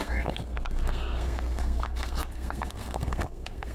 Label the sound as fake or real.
fake